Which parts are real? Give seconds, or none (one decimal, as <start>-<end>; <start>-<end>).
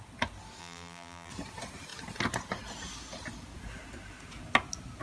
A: 0.0-0.6; 1.3-5.0